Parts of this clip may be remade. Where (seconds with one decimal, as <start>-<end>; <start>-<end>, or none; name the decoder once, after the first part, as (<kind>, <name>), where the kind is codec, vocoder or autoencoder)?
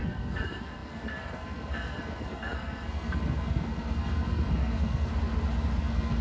0.0-5.1 (codec, SNAC); 5.8-6.2